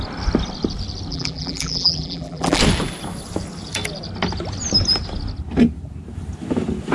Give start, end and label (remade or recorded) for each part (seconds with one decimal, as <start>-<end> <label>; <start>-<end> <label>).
0.0-1.1 recorded; 1.1-2.6 remade; 2.6-6.9 recorded